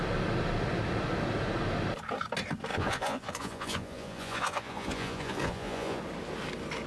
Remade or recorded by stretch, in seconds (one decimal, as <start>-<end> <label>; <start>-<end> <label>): 0.0-2.7 recorded; 2.7-6.0 remade; 6.0-6.9 recorded